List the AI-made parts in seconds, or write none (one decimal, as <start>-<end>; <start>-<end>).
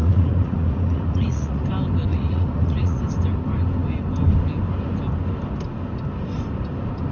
0.0-1.6; 2.1-3.0